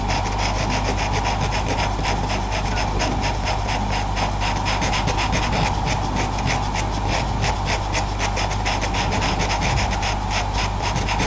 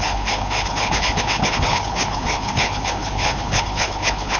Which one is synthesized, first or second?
second